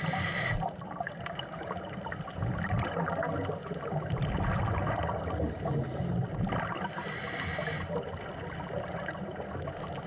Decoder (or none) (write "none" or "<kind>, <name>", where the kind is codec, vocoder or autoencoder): none